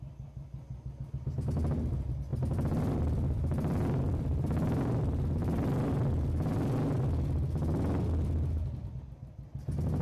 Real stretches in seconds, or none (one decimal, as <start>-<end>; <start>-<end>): 0.0-2.3; 6.1-10.0